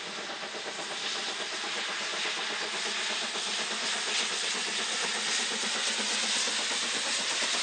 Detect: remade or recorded recorded